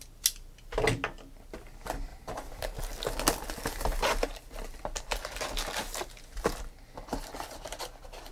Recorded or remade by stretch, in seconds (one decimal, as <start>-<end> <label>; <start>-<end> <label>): 0.0-2.1 recorded; 2.1-2.8 remade; 2.8-8.3 recorded